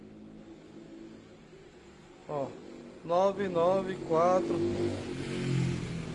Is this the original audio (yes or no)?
yes